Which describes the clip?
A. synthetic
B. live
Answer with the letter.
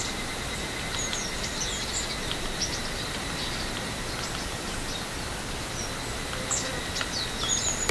B